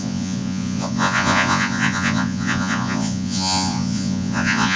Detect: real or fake fake